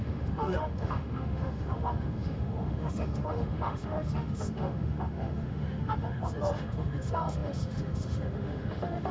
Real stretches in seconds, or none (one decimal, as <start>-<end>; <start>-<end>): none